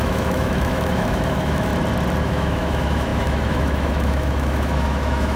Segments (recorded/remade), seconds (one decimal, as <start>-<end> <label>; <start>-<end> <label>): 0.0-1.7 remade; 1.7-2.2 recorded; 2.2-5.4 remade